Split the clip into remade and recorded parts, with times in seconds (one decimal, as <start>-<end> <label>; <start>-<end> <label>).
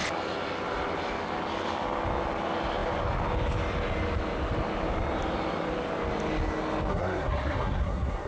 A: 0.0-6.9 recorded; 6.9-8.3 remade